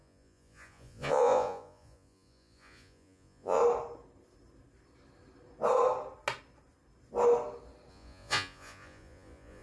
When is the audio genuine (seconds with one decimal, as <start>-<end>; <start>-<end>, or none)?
3.6-7.9